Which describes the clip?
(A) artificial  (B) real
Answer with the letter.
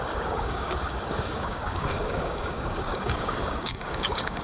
A